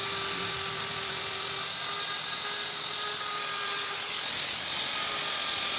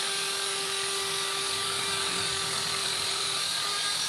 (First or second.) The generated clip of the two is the second